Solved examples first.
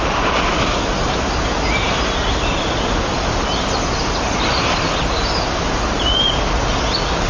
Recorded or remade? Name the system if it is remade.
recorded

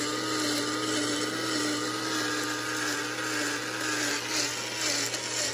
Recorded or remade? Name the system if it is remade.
recorded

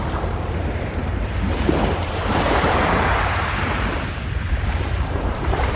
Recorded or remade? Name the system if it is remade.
remade, vocoder, BigVGAN v2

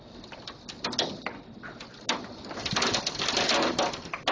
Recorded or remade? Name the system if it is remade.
recorded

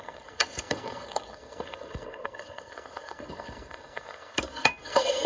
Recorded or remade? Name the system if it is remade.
remade, codec, SNAC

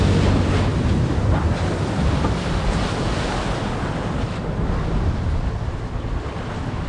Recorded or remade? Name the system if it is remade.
recorded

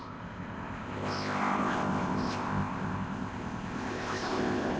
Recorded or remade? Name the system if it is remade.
remade, codec, ZipCodec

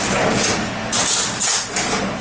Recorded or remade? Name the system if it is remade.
recorded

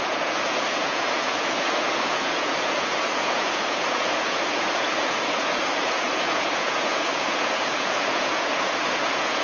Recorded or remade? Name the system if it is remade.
remade, vocoder, Vocos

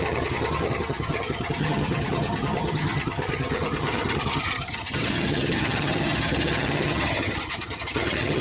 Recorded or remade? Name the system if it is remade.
remade, vocoder, HiFi-GAN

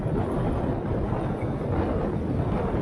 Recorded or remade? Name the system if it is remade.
recorded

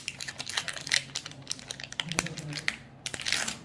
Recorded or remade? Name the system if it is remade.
recorded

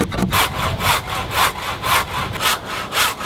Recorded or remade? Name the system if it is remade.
recorded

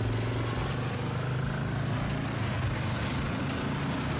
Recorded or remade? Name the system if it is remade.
recorded